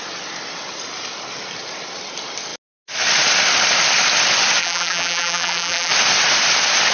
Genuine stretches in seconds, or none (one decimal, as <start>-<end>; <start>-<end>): 0.0-4.6; 5.9-6.9